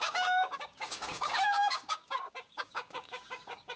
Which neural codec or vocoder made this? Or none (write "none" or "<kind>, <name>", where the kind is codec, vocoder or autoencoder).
codec, DAC